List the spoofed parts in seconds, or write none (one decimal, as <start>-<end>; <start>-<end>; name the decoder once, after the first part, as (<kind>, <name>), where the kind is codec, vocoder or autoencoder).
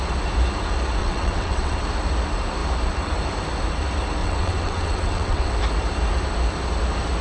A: 1.0-1.8 (vocoder, WaveNeXt); 4.2-5.5